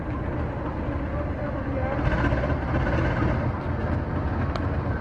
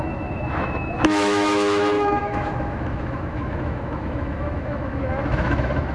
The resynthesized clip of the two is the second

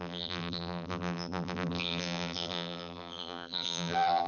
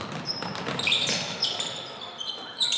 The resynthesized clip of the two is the first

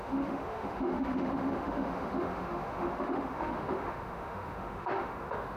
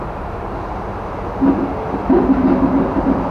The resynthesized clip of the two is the first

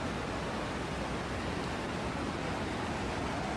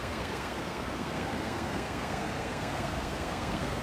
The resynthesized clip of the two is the second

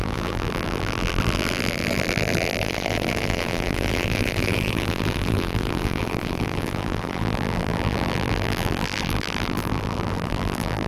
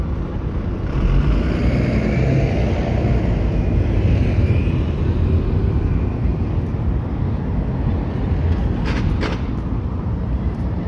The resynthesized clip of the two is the first